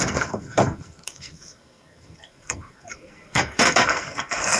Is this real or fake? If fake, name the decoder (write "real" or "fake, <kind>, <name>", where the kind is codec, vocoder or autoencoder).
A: fake, codec, SNAC